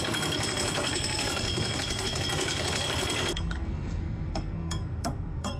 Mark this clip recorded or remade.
remade